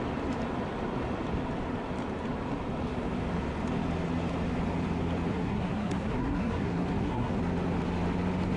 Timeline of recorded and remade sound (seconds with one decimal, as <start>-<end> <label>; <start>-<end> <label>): 0.0-5.3 recorded; 5.3-7.4 remade; 7.4-8.6 recorded